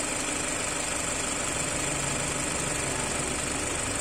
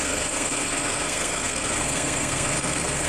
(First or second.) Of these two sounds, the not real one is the second